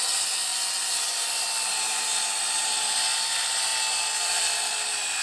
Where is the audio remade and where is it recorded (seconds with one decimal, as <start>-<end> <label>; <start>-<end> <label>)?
0.0-5.2 recorded